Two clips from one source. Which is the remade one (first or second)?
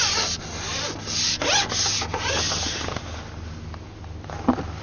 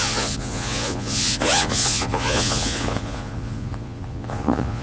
second